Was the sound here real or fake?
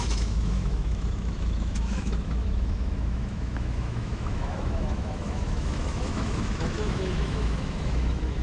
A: fake